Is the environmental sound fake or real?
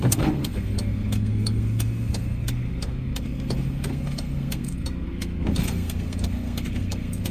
fake